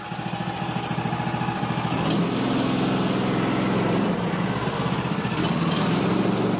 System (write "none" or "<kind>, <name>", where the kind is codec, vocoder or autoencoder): none